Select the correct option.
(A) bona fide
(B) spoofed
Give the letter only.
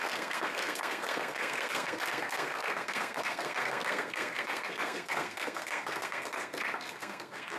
B